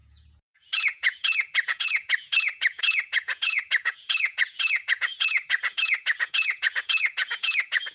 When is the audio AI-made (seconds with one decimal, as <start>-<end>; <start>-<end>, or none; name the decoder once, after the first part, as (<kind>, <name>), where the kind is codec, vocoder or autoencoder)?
0.0-7.9 (vocoder, Vocos)

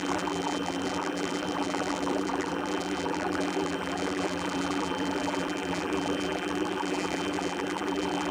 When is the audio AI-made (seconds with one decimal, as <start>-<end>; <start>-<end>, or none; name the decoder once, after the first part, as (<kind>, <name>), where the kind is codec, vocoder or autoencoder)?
0.0-8.3 (vocoder, BigVGAN v2)

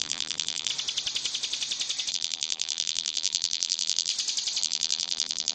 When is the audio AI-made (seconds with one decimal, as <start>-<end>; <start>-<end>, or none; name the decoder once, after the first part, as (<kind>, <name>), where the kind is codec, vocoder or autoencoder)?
0.0-0.7 (vocoder, BigVGAN v2); 2.1-4.1; 4.6-5.5

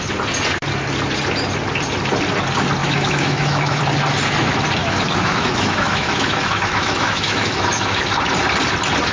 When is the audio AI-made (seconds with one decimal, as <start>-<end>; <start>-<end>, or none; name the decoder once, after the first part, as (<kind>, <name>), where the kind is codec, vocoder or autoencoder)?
2.8-3.8 (autoencoder, DAC-VAE); 4.8-8.0

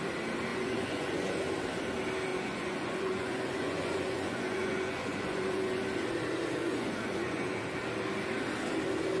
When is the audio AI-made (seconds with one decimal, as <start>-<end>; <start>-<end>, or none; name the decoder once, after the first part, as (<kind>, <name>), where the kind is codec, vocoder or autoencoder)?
0.5-1.4 (vocoder, Vocos); 2.3-5.8; 6.6-7.6